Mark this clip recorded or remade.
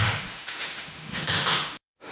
remade